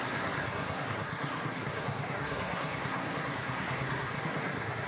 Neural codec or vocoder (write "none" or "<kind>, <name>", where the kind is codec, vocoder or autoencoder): codec, SNAC